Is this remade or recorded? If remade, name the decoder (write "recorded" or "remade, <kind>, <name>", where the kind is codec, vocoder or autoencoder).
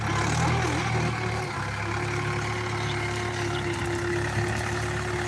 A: recorded